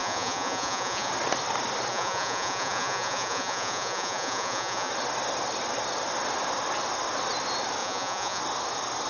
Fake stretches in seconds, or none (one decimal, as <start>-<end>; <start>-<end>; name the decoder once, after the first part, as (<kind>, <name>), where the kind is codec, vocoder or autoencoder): 0.0-1.1 (vocoder, Vocos); 1.9-4.9; 7.8-8.4